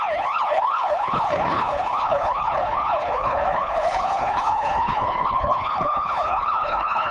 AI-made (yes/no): yes